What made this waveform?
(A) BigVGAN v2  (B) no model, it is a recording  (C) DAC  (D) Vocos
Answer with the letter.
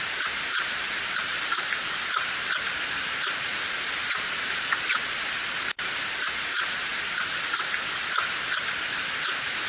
A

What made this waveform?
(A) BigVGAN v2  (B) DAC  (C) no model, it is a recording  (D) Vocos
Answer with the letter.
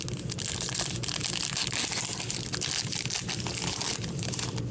C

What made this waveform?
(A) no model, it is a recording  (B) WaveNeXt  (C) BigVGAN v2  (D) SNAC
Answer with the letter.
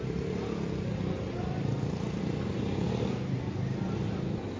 A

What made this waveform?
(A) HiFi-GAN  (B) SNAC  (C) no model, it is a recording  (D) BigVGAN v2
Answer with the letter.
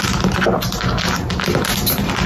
C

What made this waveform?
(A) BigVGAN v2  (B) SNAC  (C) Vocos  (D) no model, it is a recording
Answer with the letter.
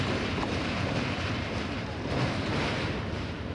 A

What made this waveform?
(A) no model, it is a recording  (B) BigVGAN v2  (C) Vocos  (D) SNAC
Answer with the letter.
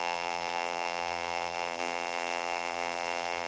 B